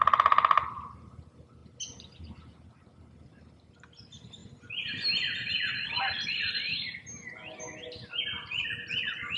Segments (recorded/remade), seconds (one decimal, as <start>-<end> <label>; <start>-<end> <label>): 0.0-9.4 recorded